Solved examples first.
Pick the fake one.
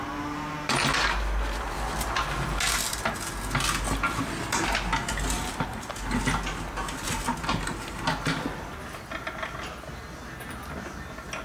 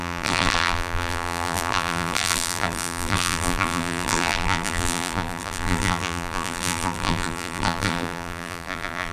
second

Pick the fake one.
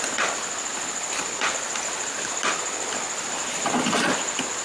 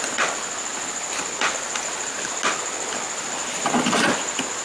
first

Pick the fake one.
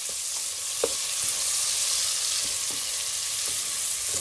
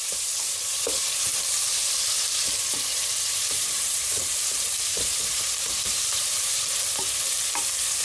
second